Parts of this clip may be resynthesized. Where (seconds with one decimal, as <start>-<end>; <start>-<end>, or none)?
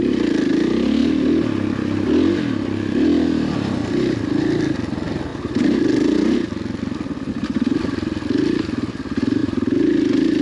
5.3-7.3; 9.4-9.9